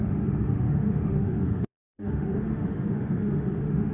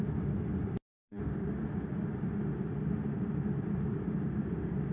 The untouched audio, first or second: second